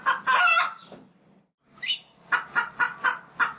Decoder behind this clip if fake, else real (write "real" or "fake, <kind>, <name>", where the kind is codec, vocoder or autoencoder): real